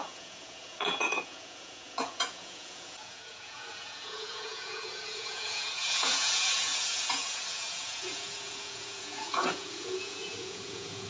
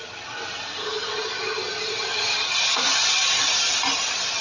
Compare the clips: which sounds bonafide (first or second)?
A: second